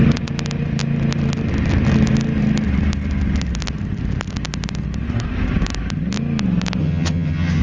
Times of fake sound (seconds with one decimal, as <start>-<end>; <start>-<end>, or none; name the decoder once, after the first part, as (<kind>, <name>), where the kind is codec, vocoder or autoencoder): 6.8-7.6 (vocoder, HiFi-GAN)